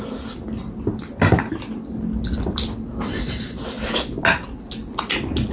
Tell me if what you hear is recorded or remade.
recorded